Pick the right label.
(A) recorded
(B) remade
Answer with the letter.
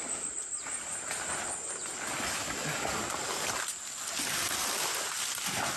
A